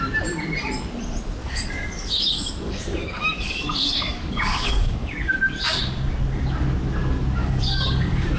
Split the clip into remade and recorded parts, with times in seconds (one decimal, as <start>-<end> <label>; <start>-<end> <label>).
0.0-1.4 recorded; 1.4-5.8 remade; 5.8-7.4 recorded; 7.4-8.4 remade